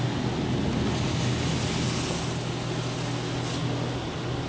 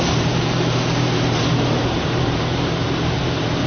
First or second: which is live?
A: first